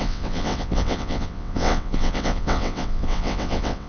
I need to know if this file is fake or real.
fake